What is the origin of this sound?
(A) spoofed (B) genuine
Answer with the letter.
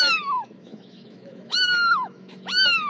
A